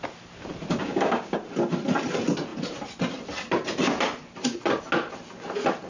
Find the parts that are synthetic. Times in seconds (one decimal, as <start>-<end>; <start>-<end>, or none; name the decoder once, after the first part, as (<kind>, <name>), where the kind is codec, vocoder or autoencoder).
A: 0.7-1.4 (codec, DAC)